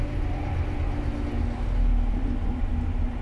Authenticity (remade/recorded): recorded